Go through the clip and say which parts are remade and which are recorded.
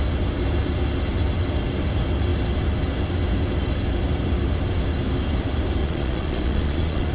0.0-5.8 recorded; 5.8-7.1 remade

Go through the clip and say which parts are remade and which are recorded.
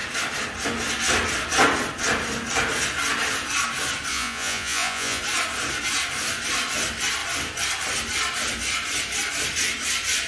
0.0-4.1 recorded; 4.1-5.2 remade; 5.2-10.3 recorded